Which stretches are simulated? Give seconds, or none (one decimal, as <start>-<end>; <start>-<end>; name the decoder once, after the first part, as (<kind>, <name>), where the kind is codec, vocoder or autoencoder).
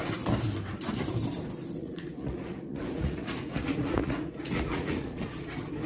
1.8-5.3 (vocoder, Vocos)